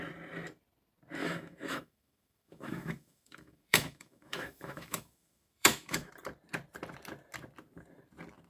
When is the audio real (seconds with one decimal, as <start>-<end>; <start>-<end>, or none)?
0.0-1.2; 6.1-8.5